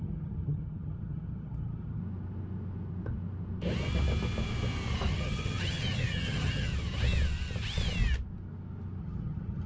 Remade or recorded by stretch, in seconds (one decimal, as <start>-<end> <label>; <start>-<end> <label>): 0.0-2.0 remade; 2.0-5.1 recorded; 5.1-6.7 remade; 6.7-9.0 recorded; 9.0-9.7 remade